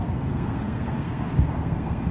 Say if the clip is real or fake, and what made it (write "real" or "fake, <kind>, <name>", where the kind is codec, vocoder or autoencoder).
fake, codec, SNAC